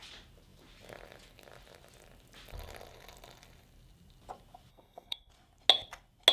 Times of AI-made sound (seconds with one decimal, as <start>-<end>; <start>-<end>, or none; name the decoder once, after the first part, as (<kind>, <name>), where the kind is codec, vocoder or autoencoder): 4.7-5.3 (codec, SNAC)

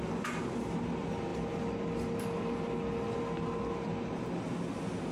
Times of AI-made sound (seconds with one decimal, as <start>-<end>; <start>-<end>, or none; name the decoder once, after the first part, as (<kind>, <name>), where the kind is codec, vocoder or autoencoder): none